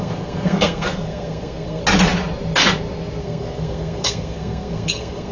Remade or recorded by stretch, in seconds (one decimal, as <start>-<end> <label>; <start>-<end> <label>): 0.0-1.8 remade; 1.8-3.2 recorded; 3.2-5.3 remade